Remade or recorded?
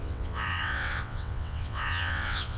remade